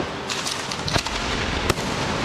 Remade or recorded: recorded